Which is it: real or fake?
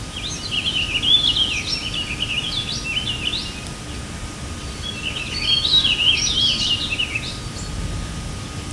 real